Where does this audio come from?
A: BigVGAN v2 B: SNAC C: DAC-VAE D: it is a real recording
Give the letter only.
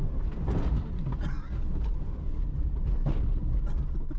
D